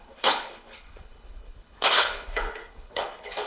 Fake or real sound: fake